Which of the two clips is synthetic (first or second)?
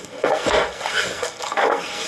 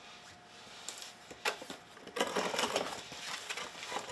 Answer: first